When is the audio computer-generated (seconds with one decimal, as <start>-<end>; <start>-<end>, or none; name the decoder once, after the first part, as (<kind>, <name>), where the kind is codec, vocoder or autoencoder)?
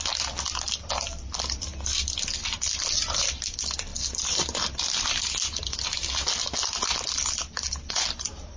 none